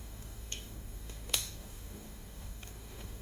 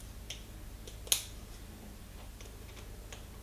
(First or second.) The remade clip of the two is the first